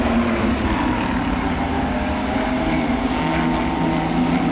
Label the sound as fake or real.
real